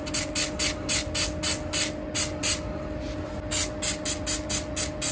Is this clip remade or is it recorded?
recorded